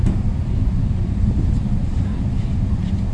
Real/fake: real